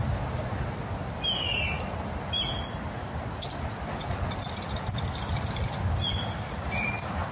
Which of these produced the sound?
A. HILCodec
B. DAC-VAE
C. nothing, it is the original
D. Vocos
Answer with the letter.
C